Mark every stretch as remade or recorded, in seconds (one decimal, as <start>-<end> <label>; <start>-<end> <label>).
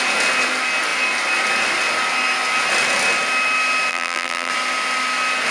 0.0-3.9 recorded; 3.9-4.5 remade; 4.5-5.5 recorded